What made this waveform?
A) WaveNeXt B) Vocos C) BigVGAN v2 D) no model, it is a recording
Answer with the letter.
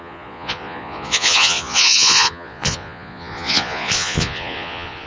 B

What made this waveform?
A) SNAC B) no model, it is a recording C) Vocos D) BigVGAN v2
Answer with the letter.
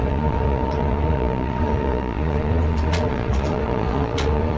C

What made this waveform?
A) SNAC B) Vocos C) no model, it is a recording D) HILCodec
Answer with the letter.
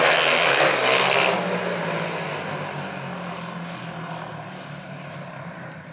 C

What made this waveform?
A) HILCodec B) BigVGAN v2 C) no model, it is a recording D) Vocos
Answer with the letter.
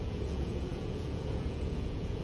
D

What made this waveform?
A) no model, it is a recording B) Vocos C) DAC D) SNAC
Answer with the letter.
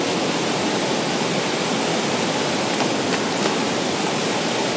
A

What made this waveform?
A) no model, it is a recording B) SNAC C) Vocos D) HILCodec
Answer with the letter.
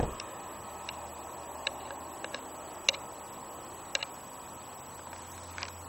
A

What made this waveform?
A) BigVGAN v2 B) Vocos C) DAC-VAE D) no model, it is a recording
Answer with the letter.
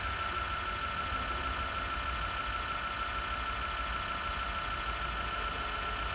D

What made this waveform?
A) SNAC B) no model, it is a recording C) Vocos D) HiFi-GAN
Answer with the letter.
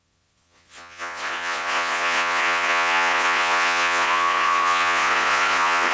C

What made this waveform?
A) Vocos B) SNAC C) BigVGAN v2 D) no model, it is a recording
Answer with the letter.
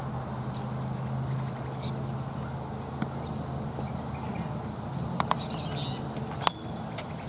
D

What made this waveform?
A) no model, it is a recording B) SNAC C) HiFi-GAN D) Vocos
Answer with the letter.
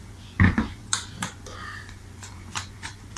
D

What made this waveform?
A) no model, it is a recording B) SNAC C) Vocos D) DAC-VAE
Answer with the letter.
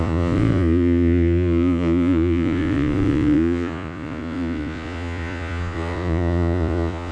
C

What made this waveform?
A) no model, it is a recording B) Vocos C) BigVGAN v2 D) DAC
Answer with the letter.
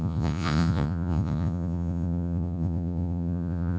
B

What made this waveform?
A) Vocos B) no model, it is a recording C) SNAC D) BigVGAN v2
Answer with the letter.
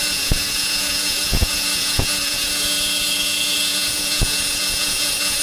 A